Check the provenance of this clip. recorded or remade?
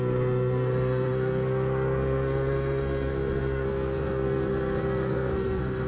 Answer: remade